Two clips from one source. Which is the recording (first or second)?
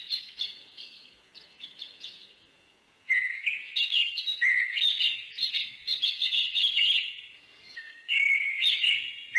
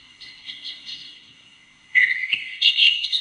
first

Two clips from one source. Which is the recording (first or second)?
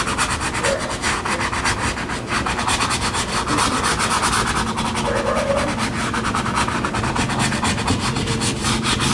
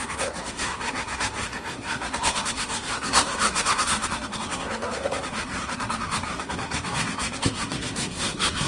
first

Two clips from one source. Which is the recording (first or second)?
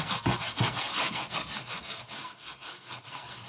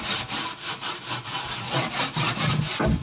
second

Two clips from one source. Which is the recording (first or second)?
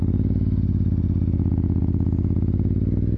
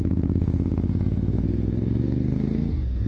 first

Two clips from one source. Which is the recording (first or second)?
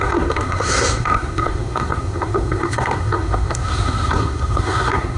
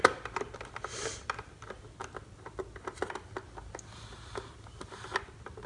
second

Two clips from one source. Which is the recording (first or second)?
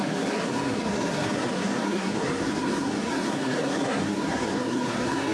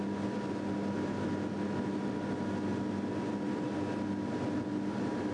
second